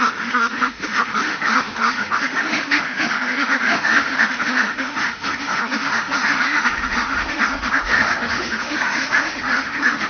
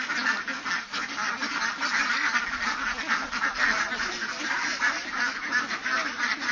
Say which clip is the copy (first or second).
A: first